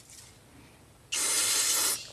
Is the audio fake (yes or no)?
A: no